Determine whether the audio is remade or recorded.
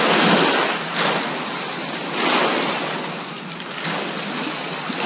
recorded